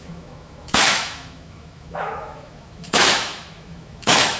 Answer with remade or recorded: remade